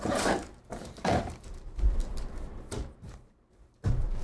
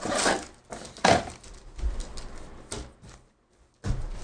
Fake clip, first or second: first